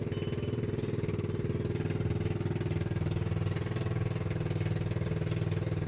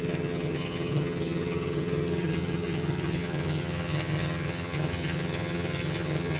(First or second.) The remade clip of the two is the second